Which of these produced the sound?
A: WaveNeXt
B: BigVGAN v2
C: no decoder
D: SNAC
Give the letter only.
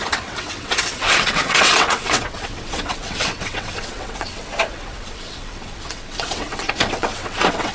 A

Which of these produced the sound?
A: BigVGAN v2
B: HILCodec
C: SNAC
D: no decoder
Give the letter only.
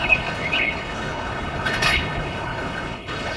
B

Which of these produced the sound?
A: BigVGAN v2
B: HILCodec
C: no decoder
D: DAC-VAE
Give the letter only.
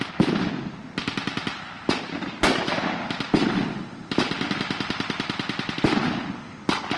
C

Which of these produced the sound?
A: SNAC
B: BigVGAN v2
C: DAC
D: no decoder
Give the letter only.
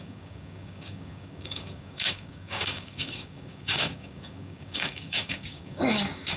C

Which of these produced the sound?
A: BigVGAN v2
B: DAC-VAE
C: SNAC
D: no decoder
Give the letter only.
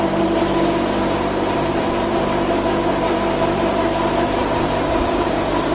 A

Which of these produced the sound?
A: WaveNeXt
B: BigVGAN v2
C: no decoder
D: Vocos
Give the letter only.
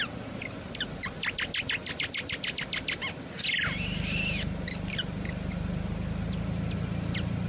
C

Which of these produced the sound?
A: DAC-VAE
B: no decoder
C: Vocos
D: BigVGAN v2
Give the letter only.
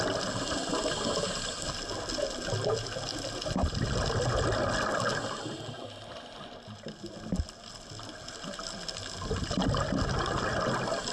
B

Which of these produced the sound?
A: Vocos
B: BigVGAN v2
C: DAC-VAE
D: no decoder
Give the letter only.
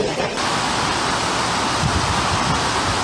D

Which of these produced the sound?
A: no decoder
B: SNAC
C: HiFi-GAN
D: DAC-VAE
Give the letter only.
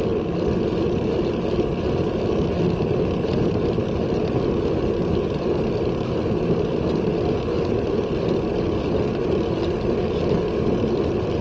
A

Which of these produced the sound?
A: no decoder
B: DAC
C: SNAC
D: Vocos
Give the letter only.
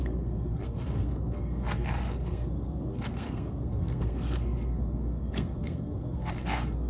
C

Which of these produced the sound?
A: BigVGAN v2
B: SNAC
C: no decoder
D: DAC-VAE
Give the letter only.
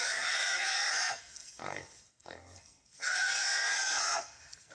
B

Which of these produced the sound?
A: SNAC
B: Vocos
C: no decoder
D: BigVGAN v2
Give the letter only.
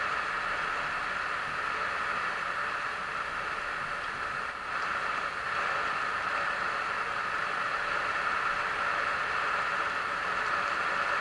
C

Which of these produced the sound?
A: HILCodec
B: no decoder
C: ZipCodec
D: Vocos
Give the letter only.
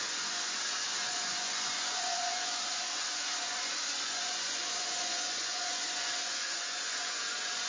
D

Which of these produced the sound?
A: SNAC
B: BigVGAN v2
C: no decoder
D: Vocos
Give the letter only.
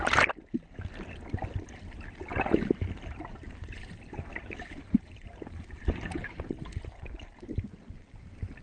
C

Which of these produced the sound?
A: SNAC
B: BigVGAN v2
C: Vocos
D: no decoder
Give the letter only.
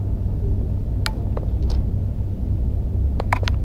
D